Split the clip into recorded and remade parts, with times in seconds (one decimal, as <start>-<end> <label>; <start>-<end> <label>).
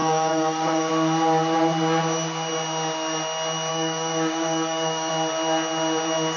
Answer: 0.0-0.9 remade; 0.9-3.7 recorded; 3.7-5.1 remade; 5.1-6.4 recorded